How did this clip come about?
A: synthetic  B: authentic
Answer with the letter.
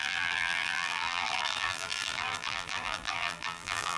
A